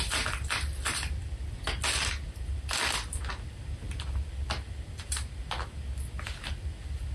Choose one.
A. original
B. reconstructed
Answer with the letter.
A